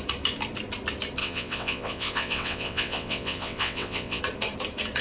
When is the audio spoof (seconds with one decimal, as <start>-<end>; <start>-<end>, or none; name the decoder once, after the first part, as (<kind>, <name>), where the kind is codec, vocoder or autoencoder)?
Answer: 1.2-4.2 (vocoder, WaveNeXt)